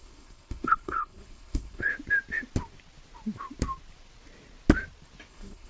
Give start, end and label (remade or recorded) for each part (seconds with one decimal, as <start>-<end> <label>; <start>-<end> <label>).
0.0-1.9 remade; 1.9-5.3 recorded; 5.3-5.7 remade